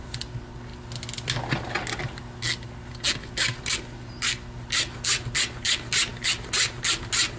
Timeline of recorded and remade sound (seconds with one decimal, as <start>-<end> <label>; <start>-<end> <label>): 0.0-7.4 recorded